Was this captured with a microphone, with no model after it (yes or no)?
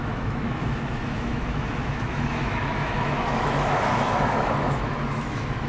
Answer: no